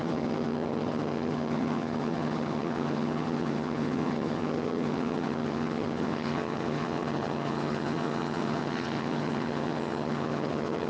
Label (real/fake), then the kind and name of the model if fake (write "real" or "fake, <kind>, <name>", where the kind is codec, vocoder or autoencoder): fake, vocoder, HiFi-GAN